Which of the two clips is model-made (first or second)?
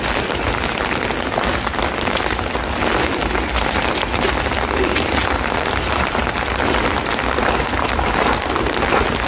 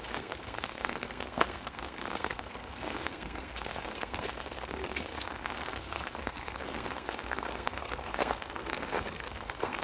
second